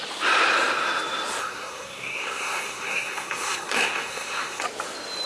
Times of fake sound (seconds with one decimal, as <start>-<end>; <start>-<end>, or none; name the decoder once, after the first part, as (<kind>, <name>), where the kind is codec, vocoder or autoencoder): 1.4-4.6 (codec, SNAC)